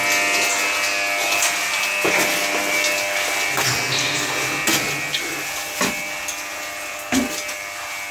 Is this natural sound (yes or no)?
yes